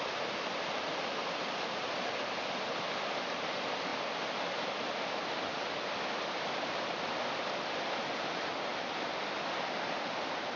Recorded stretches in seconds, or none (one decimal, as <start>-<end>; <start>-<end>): 0.0-10.6